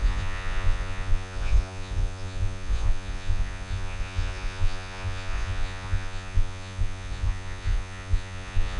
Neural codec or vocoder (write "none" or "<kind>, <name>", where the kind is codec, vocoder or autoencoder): vocoder, Vocos